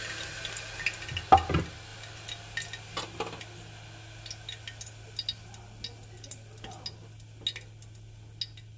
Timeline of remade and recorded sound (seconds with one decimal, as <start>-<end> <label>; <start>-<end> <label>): 0.0-8.8 recorded